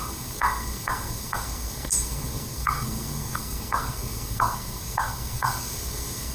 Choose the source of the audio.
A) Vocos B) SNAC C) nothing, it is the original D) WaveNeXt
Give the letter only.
B